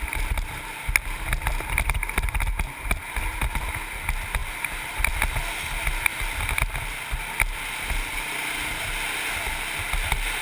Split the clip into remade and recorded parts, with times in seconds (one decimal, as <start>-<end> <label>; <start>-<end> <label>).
0.0-10.4 recorded